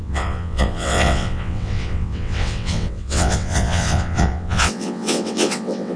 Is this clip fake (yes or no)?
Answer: yes